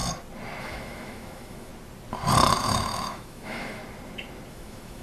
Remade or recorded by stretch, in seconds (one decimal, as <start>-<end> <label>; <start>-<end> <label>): 0.0-0.6 recorded; 0.6-1.7 remade; 1.7-2.6 recorded; 2.6-3.8 remade; 3.8-4.5 recorded; 4.5-5.0 remade